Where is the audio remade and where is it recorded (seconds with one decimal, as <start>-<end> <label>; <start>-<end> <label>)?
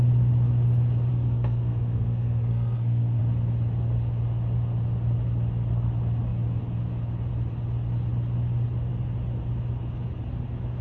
0.0-1.1 recorded; 1.1-3.2 remade; 3.2-10.8 recorded